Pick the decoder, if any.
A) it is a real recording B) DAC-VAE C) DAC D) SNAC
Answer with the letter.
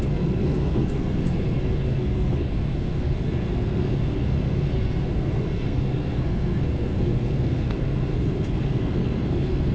D